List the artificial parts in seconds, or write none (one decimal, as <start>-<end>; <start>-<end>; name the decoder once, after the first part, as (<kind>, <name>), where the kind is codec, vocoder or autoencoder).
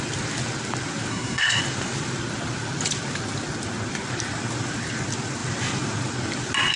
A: 1.1-1.6 (codec, SNAC)